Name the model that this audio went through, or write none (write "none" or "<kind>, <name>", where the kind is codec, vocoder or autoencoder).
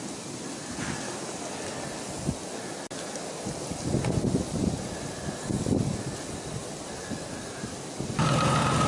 none